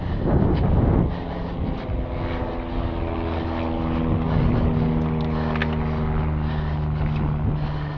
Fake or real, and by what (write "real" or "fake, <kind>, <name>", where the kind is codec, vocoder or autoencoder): real